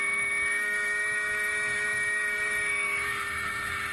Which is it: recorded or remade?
remade